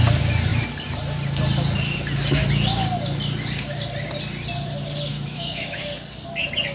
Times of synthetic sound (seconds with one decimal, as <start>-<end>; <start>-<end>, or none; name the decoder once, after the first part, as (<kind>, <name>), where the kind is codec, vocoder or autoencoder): 5.1-5.8 (autoencoder, DAC-VAE)